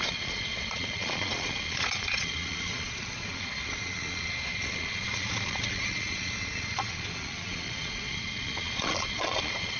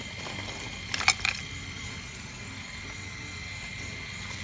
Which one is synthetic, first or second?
first